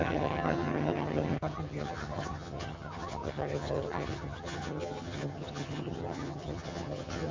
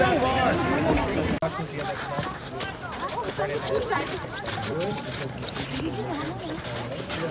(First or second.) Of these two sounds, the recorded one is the second